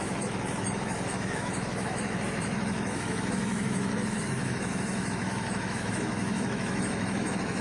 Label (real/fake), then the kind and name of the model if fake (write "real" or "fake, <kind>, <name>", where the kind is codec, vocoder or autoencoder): fake, autoencoder, DAC-VAE